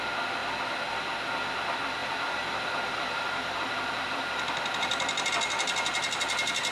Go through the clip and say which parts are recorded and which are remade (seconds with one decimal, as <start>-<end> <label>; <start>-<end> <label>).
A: 0.0-2.0 recorded; 2.0-5.3 remade; 5.3-6.7 recorded